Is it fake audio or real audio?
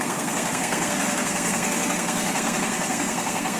fake